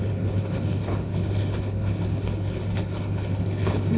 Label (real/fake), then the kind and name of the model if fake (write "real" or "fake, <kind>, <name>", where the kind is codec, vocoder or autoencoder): fake, codec, HILCodec